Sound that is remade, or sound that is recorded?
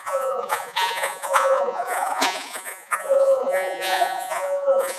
remade